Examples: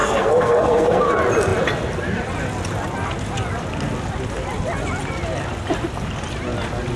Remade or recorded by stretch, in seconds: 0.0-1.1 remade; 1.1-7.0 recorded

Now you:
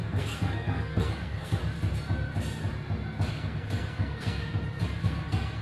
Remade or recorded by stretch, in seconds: 0.0-1.6 remade; 1.6-3.3 recorded; 3.3-4.4 remade; 4.4-5.0 recorded; 5.0-5.6 remade

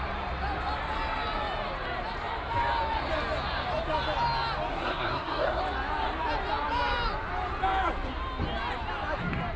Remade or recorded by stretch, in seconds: 0.0-4.7 recorded; 4.7-5.6 remade; 5.6-9.6 recorded

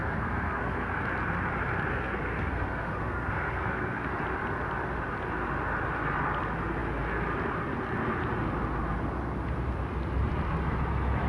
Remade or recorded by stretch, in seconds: 0.0-1.0 remade; 1.0-1.9 recorded; 1.9-4.1 remade; 4.1-11.3 recorded

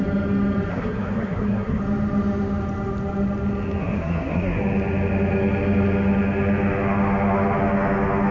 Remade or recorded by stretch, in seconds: 0.0-0.7 recorded; 0.7-1.8 remade; 1.8-3.8 recorded; 3.8-4.6 remade; 4.6-8.3 recorded

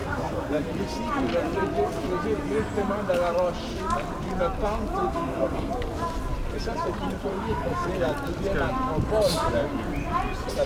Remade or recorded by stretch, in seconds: 0.0-0.7 remade; 0.7-5.0 recorded; 5.0-5.7 remade; 5.7-7.3 recorded; 7.3-7.9 remade; 7.9-10.7 recorded

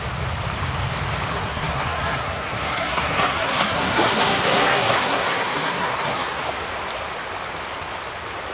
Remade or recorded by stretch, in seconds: 0.0-1.3 recorded; 1.3-6.4 remade; 6.4-8.5 recorded

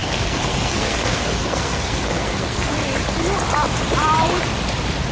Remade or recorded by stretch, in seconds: 0.0-2.7 remade; 2.7-5.1 recorded